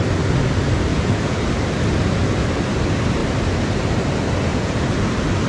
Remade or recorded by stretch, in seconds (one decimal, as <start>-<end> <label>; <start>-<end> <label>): 0.0-0.9 recorded; 0.9-1.4 remade; 1.4-4.5 recorded; 4.5-5.0 remade; 5.0-5.5 recorded